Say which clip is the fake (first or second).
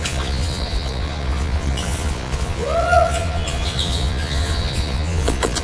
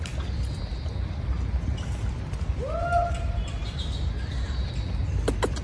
first